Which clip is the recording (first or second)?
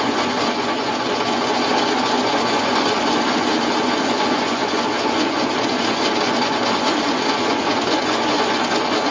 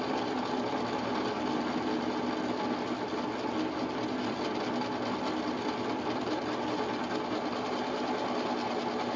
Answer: second